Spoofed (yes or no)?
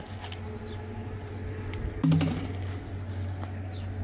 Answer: no